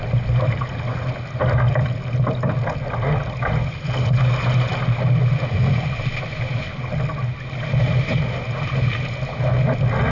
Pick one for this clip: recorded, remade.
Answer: recorded